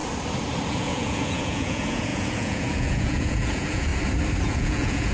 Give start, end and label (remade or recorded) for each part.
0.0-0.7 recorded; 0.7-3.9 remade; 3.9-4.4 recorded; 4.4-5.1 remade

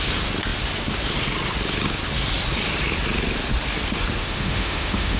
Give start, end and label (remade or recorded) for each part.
0.0-4.2 recorded; 4.2-5.2 remade

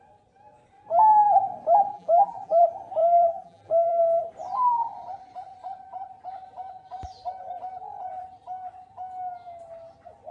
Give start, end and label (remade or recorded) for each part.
0.0-1.9 recorded; 1.9-2.6 remade; 2.6-3.0 recorded; 3.0-4.0 remade; 4.0-10.3 recorded

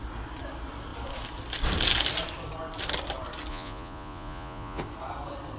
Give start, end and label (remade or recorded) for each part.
0.0-3.5 recorded; 3.5-4.8 remade; 4.8-5.6 recorded

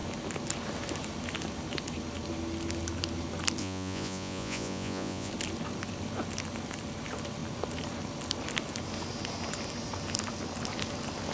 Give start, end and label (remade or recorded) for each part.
0.0-3.6 recorded; 3.6-5.3 remade; 5.3-11.3 recorded